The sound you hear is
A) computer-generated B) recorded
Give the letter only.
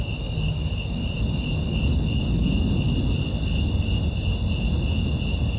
B